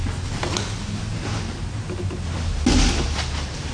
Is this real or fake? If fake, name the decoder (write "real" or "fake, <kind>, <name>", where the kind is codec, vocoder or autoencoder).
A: real